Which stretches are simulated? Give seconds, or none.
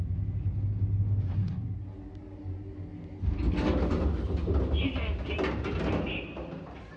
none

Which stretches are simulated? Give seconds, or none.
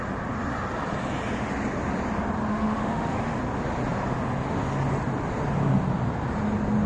2.5-3.2 (autoencoder, DAC-VAE)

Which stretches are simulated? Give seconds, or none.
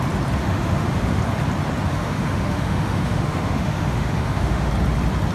0.4-1.2 (autoencoder, DAC-VAE); 1.9-4.7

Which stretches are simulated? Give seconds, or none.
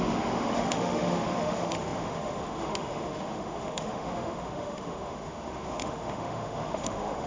0.0-7.3 (autoencoder, DAC-VAE)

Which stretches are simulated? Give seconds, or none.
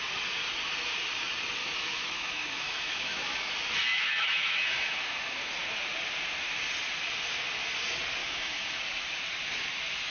1.6-3.5 (autoencoder, DAC-VAE); 3.9-5.5; 8.2-8.8